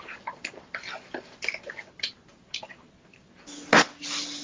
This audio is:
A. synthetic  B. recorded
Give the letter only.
B